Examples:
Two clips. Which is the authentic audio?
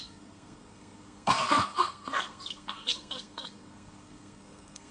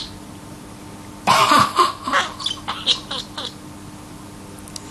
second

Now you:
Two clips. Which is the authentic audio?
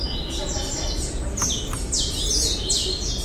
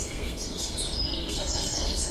first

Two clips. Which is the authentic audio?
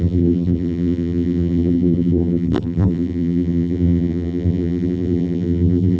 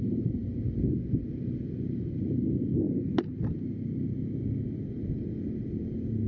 second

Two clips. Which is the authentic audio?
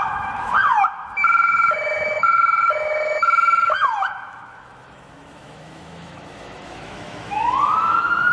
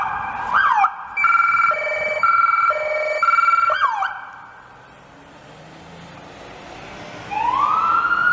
second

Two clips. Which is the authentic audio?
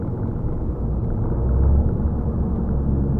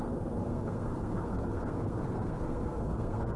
first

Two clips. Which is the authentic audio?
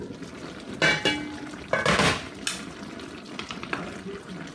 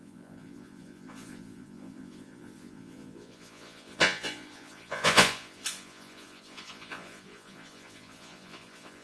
first